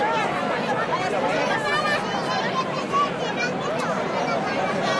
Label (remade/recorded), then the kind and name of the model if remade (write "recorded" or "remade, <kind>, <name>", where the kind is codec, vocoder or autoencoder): recorded